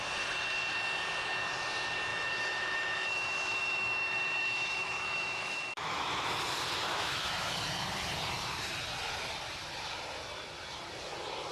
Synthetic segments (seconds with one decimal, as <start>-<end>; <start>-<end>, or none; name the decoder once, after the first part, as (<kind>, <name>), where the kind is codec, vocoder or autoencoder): 2.1-6.1 (autoencoder, DAC-VAE); 6.9-7.5